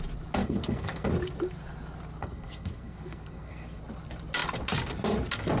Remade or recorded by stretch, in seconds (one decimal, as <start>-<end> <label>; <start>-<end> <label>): 0.0-0.4 recorded; 0.4-1.1 remade; 1.1-2.2 recorded; 2.2-3.8 remade; 3.8-5.6 recorded